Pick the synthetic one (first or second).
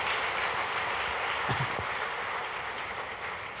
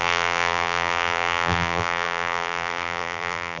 second